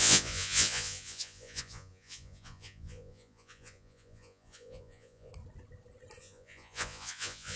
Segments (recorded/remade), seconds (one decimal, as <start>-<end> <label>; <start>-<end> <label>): 0.0-5.3 remade; 5.3-6.2 recorded; 6.2-7.6 remade